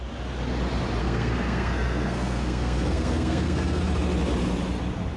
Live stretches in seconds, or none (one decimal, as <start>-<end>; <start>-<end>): 0.0-1.0; 3.8-5.2